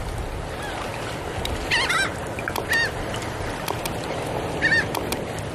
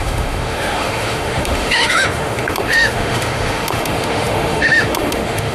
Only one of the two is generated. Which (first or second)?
second